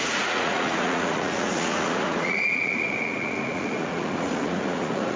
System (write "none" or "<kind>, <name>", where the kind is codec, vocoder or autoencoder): vocoder, Vocos